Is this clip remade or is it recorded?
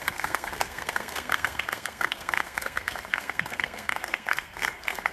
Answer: remade